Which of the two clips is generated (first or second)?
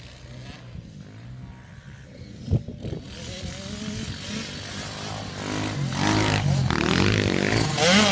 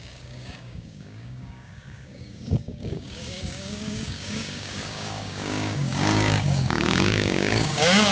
second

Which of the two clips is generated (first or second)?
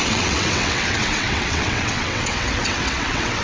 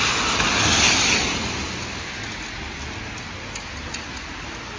first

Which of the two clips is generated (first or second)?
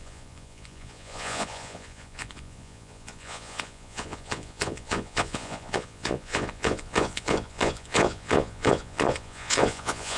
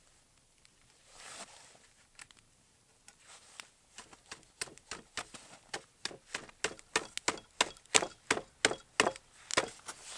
first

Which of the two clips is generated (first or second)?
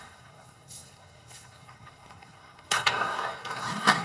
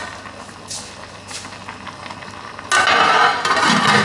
first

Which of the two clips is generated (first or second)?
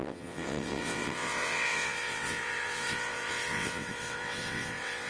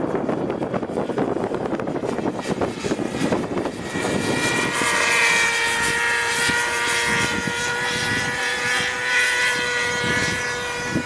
first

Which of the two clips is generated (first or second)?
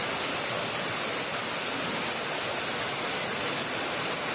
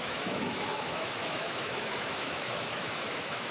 second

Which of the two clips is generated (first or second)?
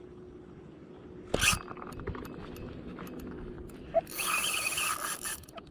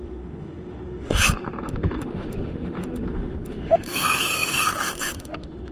second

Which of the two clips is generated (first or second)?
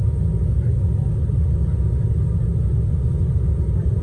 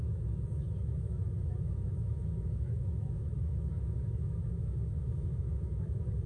second